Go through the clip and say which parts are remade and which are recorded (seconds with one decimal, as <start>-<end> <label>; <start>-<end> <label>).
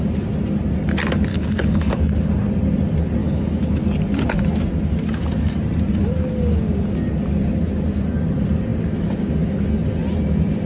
0.0-1.3 recorded; 1.3-1.9 remade; 1.9-3.2 recorded; 3.2-3.7 remade; 3.7-10.7 recorded